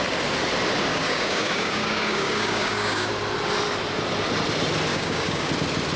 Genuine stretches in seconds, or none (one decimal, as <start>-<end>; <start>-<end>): 0.0-0.9; 3.1-4.9; 5.5-6.0